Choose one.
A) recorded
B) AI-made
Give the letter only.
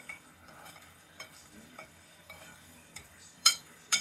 B